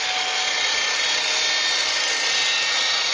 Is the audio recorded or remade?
recorded